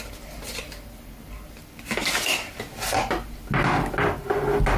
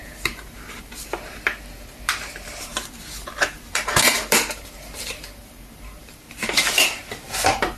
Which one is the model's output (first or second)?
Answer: second